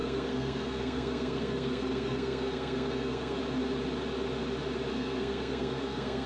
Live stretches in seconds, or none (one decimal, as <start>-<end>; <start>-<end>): 3.4-4.9